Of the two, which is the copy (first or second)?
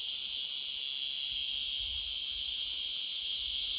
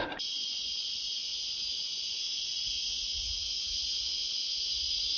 second